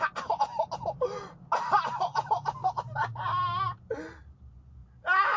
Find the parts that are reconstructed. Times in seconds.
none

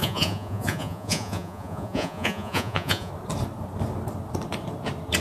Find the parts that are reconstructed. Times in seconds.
0.0-3.1

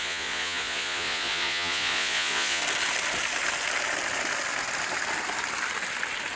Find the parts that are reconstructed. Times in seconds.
0.0-2.6

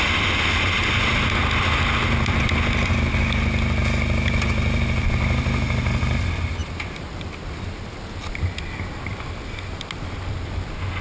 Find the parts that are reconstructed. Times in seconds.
none

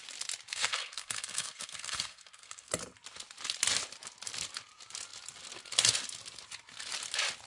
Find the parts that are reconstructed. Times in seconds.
0.5-2.7

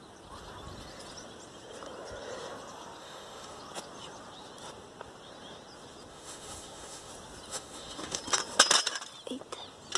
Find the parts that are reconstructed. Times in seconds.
3.0-3.6; 6.1-7.1; 7.5-8.2